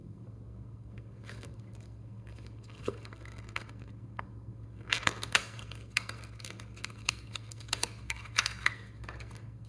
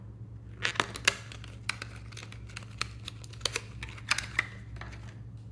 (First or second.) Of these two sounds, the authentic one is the second